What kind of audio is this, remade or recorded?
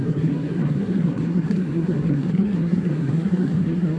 remade